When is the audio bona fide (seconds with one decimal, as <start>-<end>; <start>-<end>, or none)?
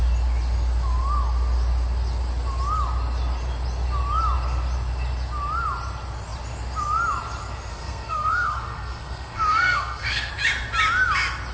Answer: 0.0-7.7; 10.3-11.5